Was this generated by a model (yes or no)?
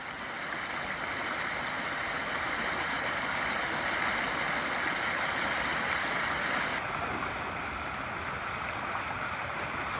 no